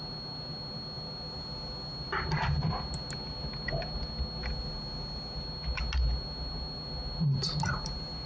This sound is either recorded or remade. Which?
recorded